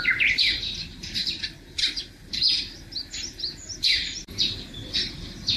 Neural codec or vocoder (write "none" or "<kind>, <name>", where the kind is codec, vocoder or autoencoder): vocoder, BigVGAN v2